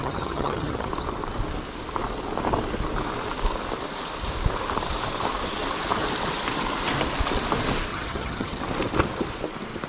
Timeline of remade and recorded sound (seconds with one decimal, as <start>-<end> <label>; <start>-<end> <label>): 0.0-0.9 remade; 0.9-7.9 recorded; 7.9-8.6 remade; 8.6-9.9 recorded